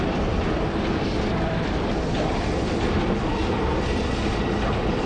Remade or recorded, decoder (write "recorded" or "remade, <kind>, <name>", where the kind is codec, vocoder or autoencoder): remade, vocoder, BigVGAN v2